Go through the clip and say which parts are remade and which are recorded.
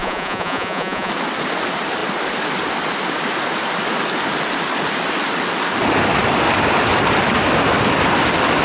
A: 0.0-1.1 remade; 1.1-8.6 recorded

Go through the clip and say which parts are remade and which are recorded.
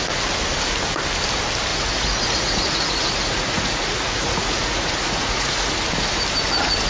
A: 0.0-1.7 recorded; 1.7-5.8 remade; 5.8-6.9 recorded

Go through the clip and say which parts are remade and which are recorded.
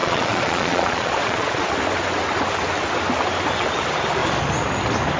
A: 0.0-1.7 remade; 1.7-5.2 recorded